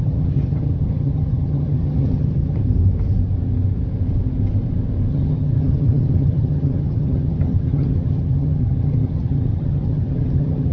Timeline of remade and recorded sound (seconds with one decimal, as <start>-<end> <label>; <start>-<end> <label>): 0.0-2.6 remade; 2.6-5.1 recorded; 5.1-10.7 remade